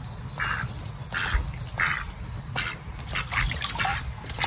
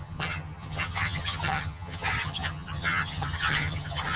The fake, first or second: second